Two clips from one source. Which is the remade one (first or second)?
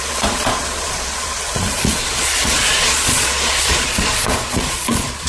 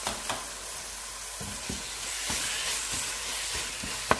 first